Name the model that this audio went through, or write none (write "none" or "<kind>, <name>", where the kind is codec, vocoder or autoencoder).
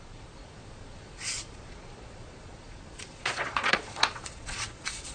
vocoder, Vocos